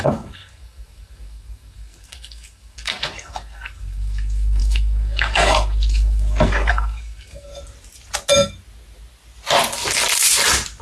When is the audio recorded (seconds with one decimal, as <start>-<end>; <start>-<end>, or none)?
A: 7.5-10.8